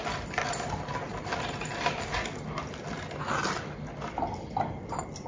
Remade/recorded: recorded